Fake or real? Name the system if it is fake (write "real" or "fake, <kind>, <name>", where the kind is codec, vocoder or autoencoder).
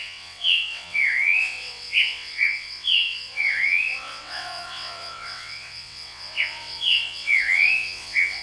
fake, vocoder, WaveNeXt